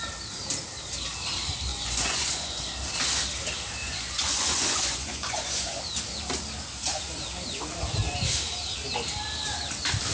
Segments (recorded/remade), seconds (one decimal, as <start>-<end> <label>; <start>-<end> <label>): 0.0-1.7 recorded; 1.7-2.6 remade; 2.6-3.8 recorded; 3.8-5.8 remade; 5.8-10.1 recorded